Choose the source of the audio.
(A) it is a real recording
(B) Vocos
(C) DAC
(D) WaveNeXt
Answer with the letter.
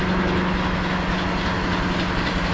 A